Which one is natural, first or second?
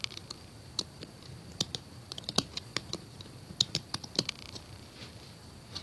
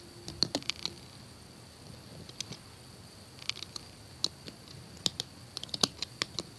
second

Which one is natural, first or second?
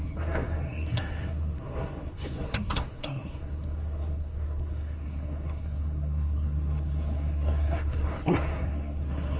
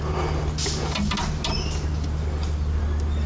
second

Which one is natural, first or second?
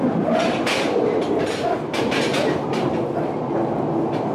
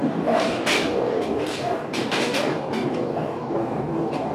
first